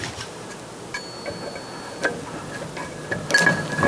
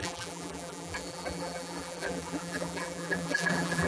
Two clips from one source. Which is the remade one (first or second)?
second